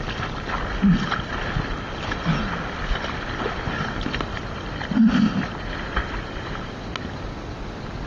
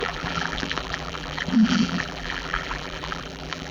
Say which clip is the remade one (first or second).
second